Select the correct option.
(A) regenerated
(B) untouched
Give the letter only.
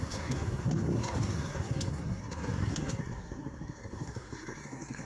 A